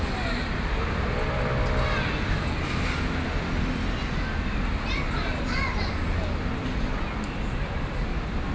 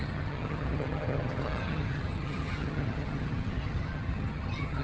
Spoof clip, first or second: second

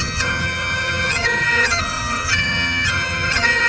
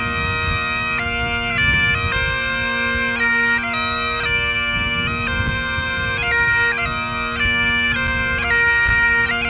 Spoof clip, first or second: first